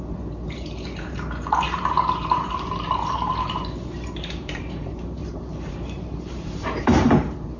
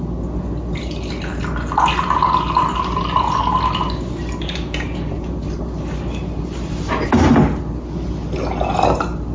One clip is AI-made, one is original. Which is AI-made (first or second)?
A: first